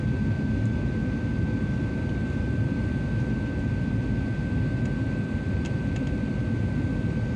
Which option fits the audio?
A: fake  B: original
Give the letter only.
B